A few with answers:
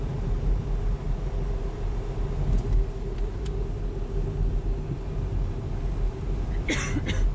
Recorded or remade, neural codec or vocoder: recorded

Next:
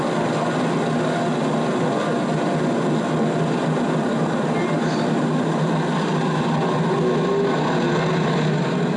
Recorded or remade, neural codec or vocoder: recorded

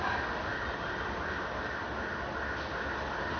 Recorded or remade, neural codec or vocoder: recorded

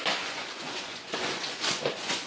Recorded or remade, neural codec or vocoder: remade, vocoder, Vocos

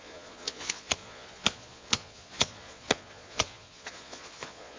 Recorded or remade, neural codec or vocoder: remade, vocoder, Vocos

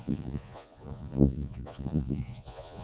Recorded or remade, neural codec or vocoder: remade, vocoder, Vocos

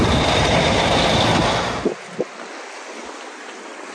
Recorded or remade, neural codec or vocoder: recorded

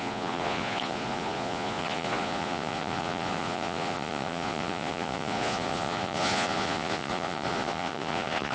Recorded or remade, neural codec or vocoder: remade, vocoder, Vocos